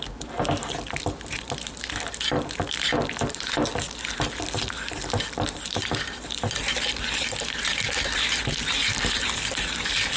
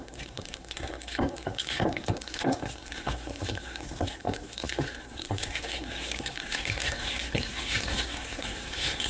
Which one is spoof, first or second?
second